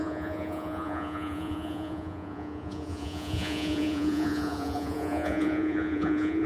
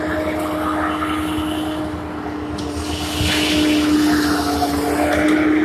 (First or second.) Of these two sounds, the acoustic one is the second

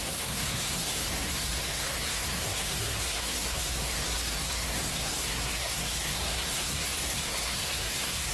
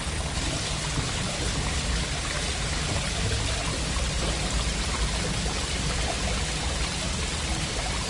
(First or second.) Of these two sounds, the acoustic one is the second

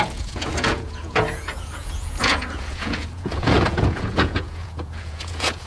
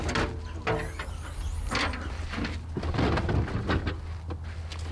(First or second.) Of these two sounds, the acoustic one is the second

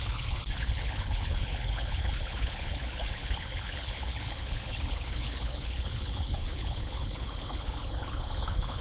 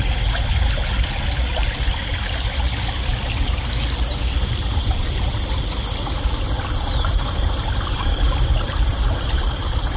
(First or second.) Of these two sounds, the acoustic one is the second